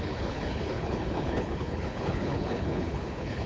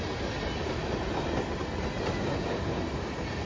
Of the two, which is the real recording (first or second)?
second